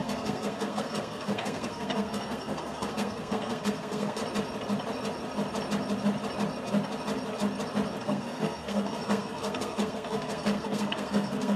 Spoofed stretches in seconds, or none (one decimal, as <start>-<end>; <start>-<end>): 0.0-4.2; 8.0-11.6